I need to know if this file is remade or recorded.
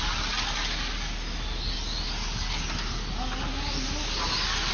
recorded